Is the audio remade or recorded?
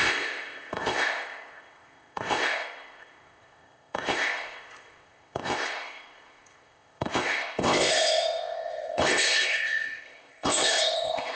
remade